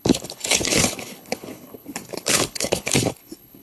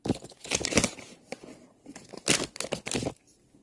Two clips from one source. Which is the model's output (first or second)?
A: first